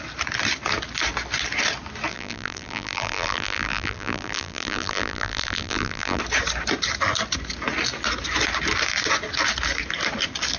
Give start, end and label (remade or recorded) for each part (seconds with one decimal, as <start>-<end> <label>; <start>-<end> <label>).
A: 0.0-2.1 recorded; 2.1-6.2 remade; 6.2-10.6 recorded